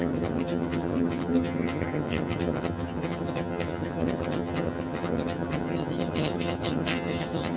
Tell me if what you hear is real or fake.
fake